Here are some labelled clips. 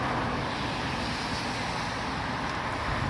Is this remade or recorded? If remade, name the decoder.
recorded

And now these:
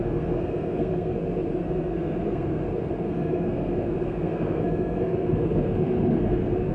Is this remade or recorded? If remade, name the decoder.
remade, codec, SNAC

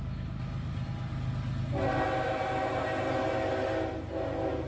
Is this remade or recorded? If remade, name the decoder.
recorded